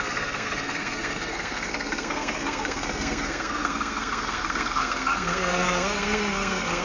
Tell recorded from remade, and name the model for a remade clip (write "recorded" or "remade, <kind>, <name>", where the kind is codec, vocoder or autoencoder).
remade, codec, SNAC